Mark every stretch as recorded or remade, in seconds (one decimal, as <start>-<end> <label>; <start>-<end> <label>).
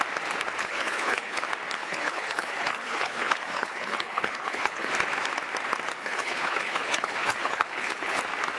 0.0-0.6 recorded; 0.6-1.4 remade; 1.4-1.8 recorded; 1.8-4.9 remade; 4.9-6.0 recorded; 6.0-8.2 remade; 8.2-8.6 recorded